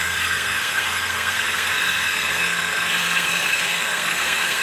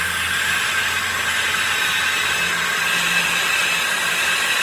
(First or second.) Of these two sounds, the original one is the second